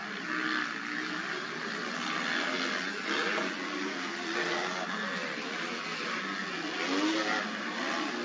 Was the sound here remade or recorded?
recorded